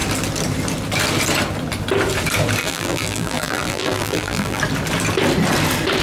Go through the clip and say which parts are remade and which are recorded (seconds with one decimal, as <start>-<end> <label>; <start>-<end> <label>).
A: 0.0-2.6 recorded; 2.6-4.6 remade; 4.6-6.0 recorded